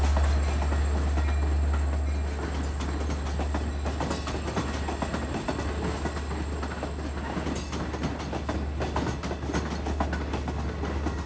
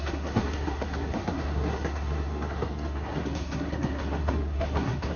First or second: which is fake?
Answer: second